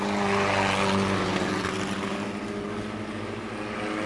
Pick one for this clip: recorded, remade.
recorded